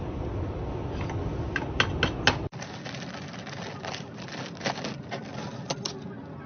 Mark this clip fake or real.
real